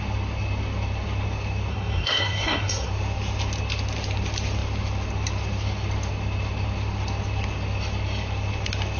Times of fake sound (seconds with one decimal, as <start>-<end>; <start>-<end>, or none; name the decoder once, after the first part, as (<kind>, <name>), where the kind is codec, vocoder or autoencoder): 1.7-2.9 (codec, SNAC)